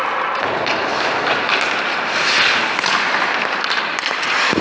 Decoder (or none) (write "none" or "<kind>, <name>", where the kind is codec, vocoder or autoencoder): none